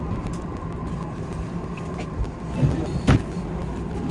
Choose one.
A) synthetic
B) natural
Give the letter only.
B